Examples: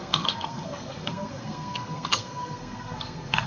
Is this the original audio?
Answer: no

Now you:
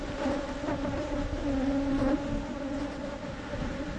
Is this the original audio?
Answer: yes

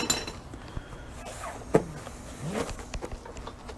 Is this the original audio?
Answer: yes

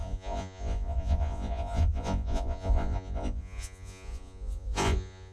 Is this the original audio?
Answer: no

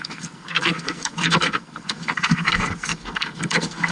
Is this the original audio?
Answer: no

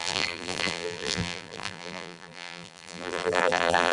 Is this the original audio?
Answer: no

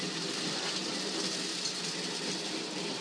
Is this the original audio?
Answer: yes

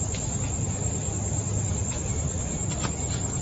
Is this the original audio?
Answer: yes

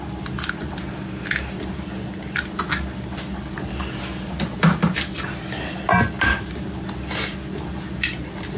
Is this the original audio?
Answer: yes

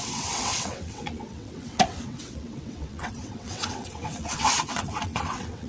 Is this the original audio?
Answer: no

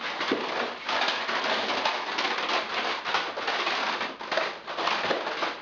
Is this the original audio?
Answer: yes